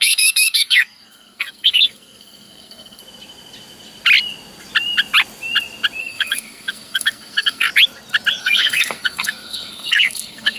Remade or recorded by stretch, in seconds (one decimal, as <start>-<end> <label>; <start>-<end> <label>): 0.0-3.0 remade; 3.0-6.0 recorded; 6.0-7.7 remade; 7.7-8.4 recorded; 8.4-10.6 remade